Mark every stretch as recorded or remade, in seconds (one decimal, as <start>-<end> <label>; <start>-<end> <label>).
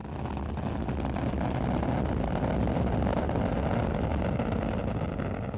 0.0-3.4 remade; 3.4-4.1 recorded; 4.1-4.8 remade; 4.8-5.6 recorded